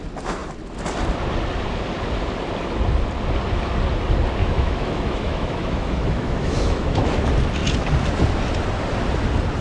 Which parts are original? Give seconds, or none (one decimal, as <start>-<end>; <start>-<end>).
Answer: 0.0-4.4; 7.1-9.6